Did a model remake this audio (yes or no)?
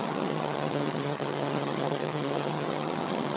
yes